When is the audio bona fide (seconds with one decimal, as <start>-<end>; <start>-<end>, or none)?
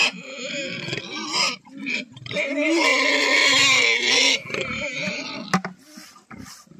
0.0-6.8